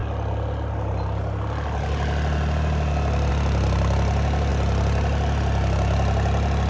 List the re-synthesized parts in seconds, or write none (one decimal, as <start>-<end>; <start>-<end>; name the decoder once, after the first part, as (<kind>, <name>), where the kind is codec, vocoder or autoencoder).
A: none